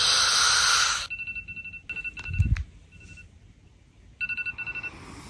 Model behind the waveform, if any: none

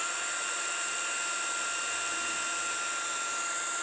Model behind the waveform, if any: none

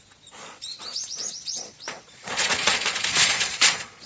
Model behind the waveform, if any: vocoder, Vocos